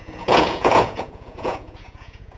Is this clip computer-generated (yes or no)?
yes